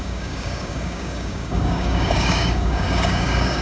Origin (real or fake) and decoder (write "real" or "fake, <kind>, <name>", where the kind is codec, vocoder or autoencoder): fake, codec, DAC